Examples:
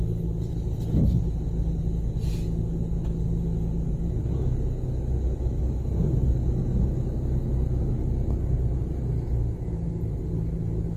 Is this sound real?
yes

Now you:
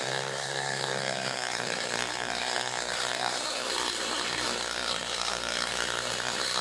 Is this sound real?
no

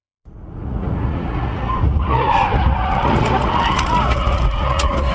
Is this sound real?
no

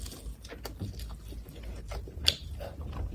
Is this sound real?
yes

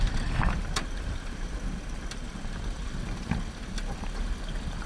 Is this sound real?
yes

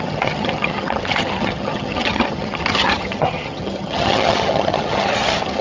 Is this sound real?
no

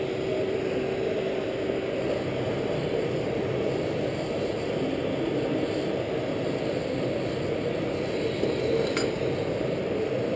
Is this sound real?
yes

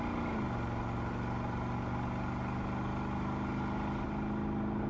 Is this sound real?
yes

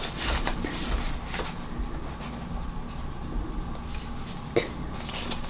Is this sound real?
yes